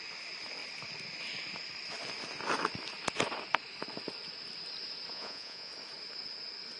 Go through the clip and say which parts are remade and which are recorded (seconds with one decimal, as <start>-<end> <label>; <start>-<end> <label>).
0.0-5.1 recorded; 5.1-5.7 remade; 5.7-6.8 recorded